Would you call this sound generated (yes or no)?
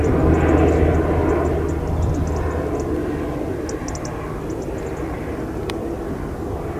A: no